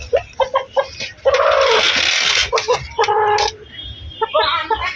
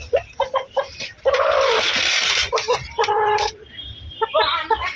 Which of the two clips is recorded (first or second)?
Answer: first